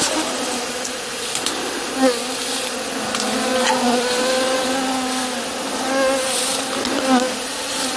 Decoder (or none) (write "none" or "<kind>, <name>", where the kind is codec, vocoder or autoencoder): none